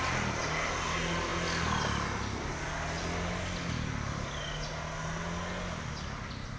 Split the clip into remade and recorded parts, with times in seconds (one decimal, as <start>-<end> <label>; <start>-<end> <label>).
0.0-6.6 recorded